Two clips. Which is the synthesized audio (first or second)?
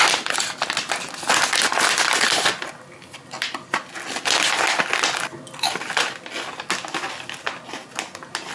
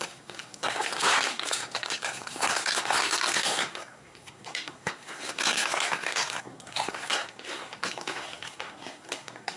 second